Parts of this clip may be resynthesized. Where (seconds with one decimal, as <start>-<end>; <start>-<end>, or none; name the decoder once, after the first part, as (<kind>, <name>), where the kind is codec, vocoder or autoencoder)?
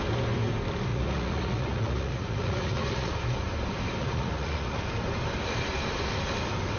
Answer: 0.9-3.1 (vocoder, Vocos); 4.0-4.8